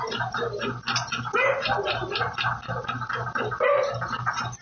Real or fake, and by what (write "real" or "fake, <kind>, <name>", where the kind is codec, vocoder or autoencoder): real